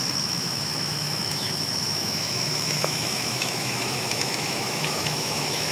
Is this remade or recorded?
remade